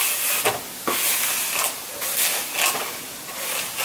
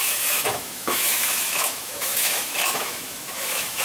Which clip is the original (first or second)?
first